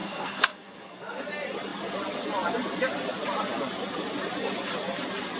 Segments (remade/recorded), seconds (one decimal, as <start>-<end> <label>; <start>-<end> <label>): 0.0-1.2 remade; 1.2-5.4 recorded